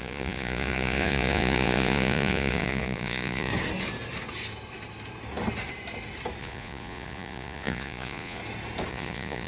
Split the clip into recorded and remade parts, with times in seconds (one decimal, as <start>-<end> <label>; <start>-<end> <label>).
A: 0.0-3.5 remade; 3.5-6.4 recorded; 6.4-8.4 remade; 8.4-8.9 recorded; 8.9-9.5 remade